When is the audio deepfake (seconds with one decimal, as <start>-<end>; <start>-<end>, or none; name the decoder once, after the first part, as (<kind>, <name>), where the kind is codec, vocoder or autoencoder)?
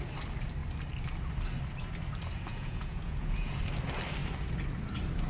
2.5-3.6 (vocoder, Vocos)